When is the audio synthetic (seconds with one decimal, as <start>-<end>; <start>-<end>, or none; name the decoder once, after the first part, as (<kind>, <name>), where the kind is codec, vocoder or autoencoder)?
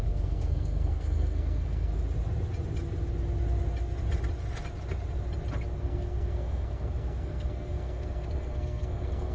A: 0.0-1.9 (codec, SNAC); 5.8-9.3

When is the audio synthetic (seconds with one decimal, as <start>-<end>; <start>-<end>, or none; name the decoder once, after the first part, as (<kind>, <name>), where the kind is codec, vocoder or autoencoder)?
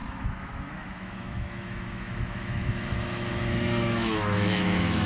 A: 0.0-5.1 (autoencoder, DAC-VAE)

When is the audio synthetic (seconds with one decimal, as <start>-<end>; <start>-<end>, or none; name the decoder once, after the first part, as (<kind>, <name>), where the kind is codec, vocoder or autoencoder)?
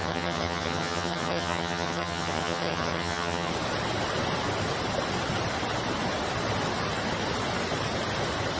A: 0.0-3.5 (vocoder, HiFi-GAN)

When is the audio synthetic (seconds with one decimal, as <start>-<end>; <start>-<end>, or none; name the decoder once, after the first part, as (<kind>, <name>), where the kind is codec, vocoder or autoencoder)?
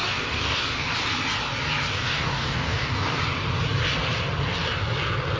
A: 0.0-0.9 (codec, DAC); 1.9-3.2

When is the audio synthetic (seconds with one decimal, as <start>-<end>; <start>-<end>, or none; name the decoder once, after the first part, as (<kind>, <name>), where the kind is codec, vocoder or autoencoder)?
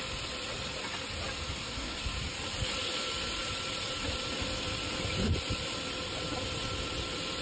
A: 1.5-2.0 (codec, SNAC)